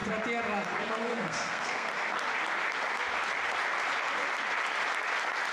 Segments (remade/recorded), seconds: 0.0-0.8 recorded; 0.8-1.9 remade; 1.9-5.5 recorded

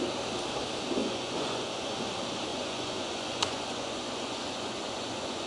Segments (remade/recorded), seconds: 0.0-1.0 recorded; 1.0-2.1 remade; 2.1-2.5 recorded; 2.5-5.5 remade

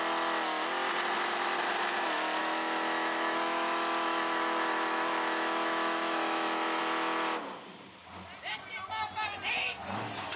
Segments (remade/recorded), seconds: 0.0-2.4 recorded; 2.4-6.8 remade; 6.8-10.4 recorded

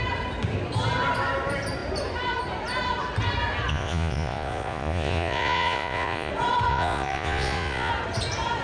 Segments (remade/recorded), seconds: 0.0-3.7 recorded; 3.7-6.3 remade; 6.3-6.7 recorded; 6.7-7.9 remade; 7.9-8.6 recorded